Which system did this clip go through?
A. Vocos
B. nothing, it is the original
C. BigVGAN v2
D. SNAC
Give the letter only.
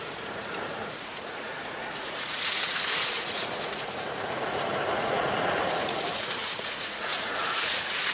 A